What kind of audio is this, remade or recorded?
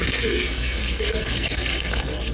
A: remade